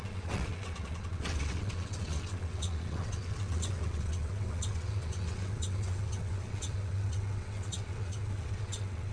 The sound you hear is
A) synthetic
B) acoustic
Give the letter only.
A